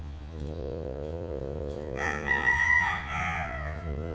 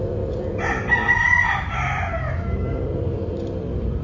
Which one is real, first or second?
second